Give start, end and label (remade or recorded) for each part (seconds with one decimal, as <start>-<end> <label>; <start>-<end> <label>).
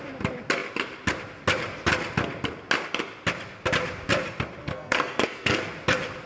0.0-4.6 recorded; 4.6-5.6 remade; 5.6-6.3 recorded